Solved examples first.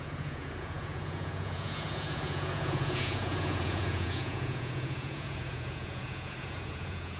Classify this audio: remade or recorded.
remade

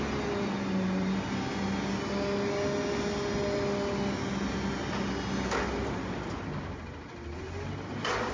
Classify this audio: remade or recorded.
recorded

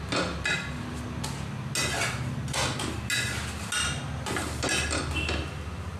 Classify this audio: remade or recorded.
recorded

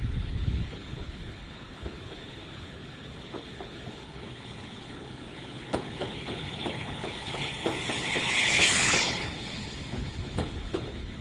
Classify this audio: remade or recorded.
remade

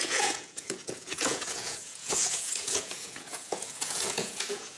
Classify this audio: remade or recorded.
remade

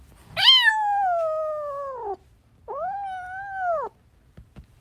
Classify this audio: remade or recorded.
recorded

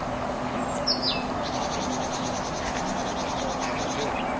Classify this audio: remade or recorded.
recorded